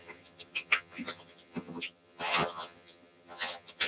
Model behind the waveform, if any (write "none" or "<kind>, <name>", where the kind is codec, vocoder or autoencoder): vocoder, HiFi-GAN